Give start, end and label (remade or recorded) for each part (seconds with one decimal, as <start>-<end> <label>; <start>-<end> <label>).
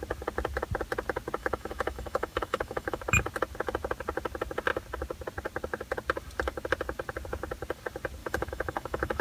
0.0-1.4 recorded; 1.4-3.0 remade; 3.0-8.2 recorded; 8.2-9.2 remade